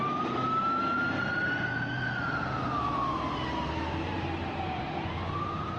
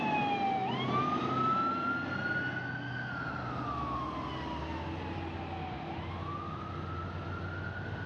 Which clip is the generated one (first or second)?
first